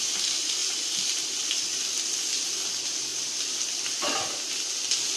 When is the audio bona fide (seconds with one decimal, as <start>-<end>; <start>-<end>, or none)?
0.0-5.2